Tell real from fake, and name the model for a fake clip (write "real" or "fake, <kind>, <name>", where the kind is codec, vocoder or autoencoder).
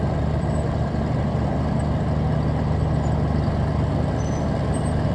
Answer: real